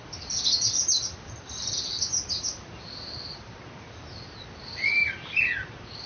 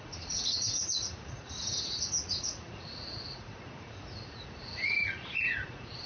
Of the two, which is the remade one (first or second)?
second